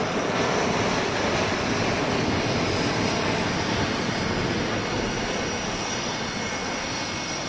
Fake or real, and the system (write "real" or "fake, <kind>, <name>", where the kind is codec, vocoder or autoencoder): real